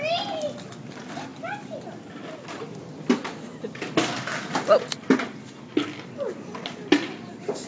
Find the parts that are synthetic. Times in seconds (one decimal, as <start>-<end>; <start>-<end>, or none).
1.3-2.8; 4.3-7.7